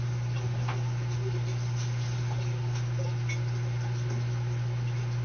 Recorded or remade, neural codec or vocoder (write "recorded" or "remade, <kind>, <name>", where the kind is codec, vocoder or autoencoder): recorded